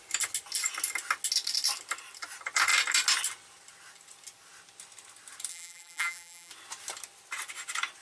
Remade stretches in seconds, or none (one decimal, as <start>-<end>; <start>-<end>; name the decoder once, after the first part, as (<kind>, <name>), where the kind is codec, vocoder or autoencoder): 5.5-6.5 (vocoder, BigVGAN v2)